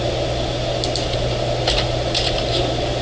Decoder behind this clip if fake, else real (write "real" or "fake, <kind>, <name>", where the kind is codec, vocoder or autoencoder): real